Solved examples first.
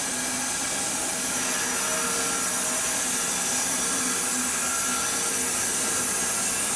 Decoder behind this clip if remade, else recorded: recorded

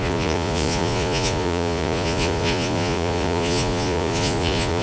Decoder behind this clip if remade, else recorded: remade, vocoder, Vocos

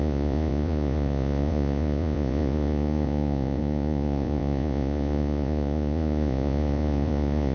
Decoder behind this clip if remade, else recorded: remade, vocoder, Vocos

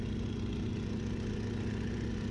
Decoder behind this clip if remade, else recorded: recorded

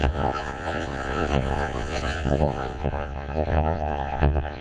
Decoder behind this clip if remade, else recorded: remade, vocoder, Vocos